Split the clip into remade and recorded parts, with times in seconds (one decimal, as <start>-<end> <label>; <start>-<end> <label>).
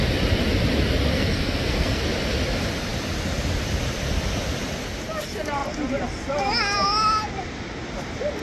0.0-1.1 recorded; 1.1-2.0 remade; 2.0-8.4 recorded